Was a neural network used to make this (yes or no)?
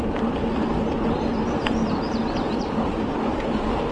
yes